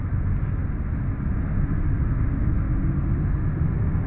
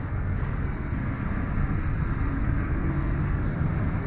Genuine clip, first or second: first